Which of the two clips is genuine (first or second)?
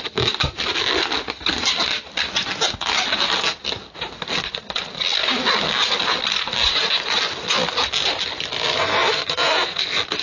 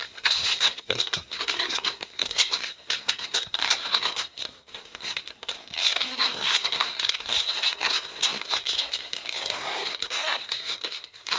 first